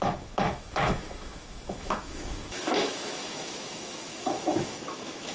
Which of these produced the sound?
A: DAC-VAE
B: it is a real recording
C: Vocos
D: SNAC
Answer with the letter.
A